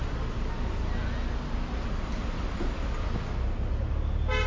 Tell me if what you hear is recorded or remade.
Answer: recorded